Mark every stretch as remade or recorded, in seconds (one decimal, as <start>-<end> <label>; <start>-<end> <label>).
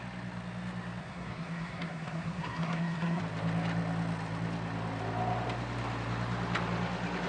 0.0-1.0 recorded; 1.0-3.2 remade; 3.2-7.3 recorded